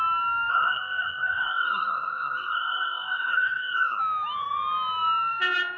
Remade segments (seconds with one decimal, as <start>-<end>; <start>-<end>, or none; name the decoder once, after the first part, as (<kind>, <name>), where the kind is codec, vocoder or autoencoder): 0.5-4.0 (codec, SNAC)